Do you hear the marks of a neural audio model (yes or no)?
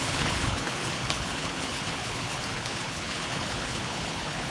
yes